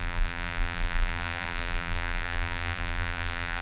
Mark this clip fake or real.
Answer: fake